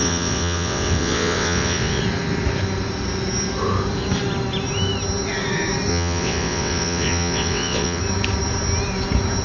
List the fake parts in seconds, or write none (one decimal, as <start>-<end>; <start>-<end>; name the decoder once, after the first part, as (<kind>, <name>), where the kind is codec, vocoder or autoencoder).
0.0-2.0 (vocoder, WaveNeXt); 5.9-8.0